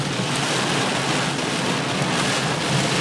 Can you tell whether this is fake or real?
real